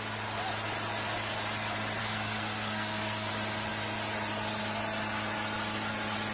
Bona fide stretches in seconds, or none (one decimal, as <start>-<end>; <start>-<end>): 0.0-2.0; 3.3-6.3